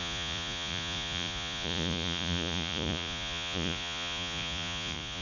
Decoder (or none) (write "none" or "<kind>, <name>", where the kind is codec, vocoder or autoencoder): vocoder, Vocos